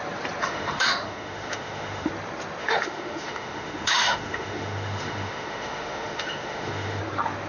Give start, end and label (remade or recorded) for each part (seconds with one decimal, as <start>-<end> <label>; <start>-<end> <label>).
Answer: 0.0-0.4 recorded; 0.4-2.1 remade; 2.1-2.6 recorded; 2.6-7.0 remade; 7.0-7.5 recorded

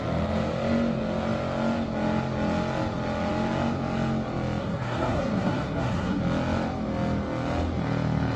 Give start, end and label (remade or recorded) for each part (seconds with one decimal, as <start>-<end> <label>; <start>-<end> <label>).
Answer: 0.0-4.6 recorded; 4.6-6.2 remade; 6.2-8.4 recorded

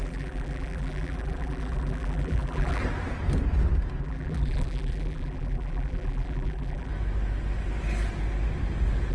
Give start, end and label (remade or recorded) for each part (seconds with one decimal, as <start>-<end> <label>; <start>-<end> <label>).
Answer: 0.0-2.8 remade; 2.8-4.0 recorded; 4.0-6.9 remade; 6.9-9.1 recorded

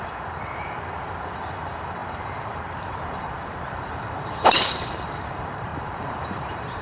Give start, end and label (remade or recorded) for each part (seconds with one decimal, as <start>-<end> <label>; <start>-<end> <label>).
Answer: 0.0-6.8 remade